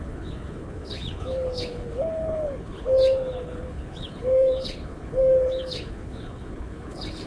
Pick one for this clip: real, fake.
fake